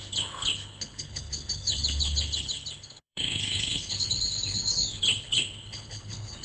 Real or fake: fake